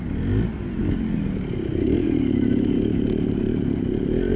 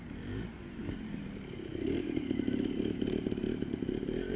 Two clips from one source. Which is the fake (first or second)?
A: second